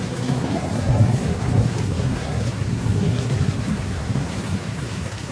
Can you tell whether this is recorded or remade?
remade